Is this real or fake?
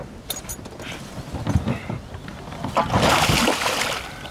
real